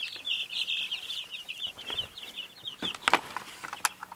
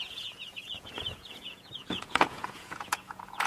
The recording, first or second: first